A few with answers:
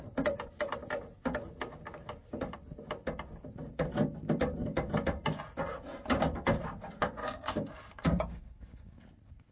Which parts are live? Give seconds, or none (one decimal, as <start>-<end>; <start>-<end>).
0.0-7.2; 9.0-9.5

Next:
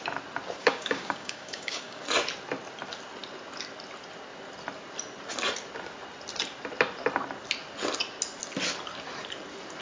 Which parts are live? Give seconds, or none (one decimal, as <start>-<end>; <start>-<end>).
0.0-0.6; 2.0-9.8

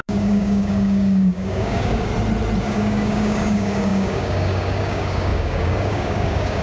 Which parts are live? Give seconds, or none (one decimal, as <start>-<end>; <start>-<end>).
2.1-2.6